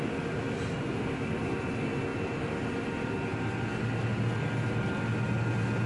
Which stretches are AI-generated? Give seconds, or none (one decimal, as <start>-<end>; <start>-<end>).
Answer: none